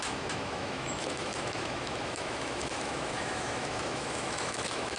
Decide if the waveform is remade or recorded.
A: remade